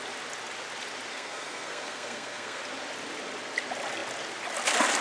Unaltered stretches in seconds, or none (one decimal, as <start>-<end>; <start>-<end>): 0.0-1.1; 2.6-5.0

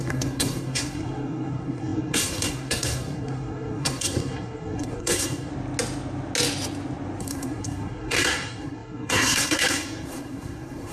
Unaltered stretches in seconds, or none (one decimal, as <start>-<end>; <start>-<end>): 5.5-7.2

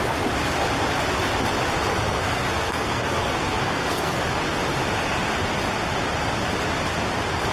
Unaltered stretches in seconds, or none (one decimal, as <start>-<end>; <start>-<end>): 0.0-1.9; 4.2-7.5

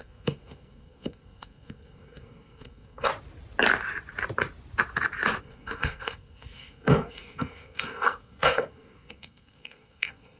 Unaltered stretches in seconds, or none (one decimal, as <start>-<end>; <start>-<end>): 3.1-5.4